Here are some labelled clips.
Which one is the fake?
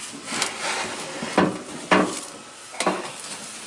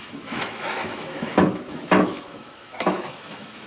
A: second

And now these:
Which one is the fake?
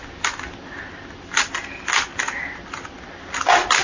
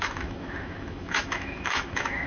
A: second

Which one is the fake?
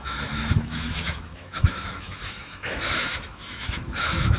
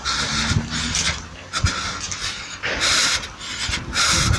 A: first